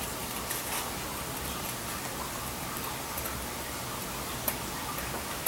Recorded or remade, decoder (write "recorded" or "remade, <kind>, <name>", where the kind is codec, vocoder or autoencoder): recorded